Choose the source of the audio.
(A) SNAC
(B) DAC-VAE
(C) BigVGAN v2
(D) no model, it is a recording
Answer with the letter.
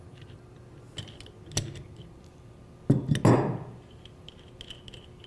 D